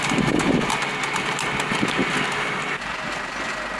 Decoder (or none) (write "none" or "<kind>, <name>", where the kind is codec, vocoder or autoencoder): none